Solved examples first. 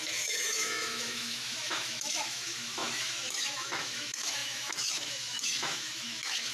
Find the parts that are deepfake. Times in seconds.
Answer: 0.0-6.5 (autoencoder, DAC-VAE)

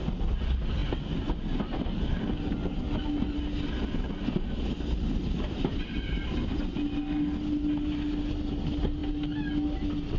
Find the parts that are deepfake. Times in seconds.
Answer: none

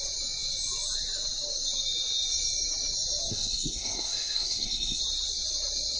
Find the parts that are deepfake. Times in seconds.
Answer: 3.3-5.0 (codec, SNAC)

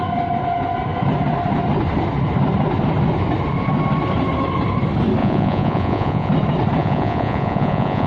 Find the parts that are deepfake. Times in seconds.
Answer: 5.2-6.3 (vocoder, Vocos); 6.8-8.1

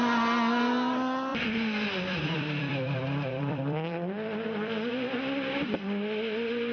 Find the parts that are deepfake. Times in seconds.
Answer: 1.3-4.9 (vocoder, BigVGAN v2)

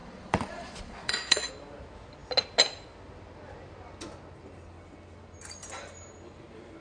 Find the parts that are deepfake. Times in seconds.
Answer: 0.0-1.5 (vocoder, Vocos)

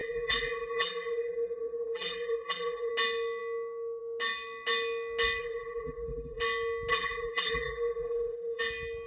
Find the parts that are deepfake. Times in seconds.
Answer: 0.0-2.9 (vocoder, BigVGAN v2); 5.4-6.4; 6.9-8.6